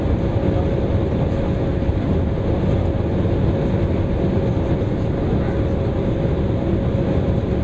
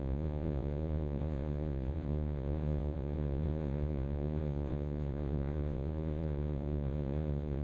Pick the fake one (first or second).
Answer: second